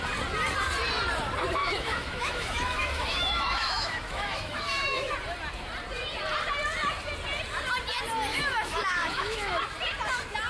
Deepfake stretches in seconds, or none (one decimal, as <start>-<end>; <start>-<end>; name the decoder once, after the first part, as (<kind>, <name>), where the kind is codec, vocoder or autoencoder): 1.6-5.1 (autoencoder, DAC-VAE); 8.3-9.6